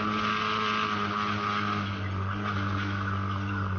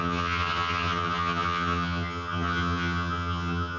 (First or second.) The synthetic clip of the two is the second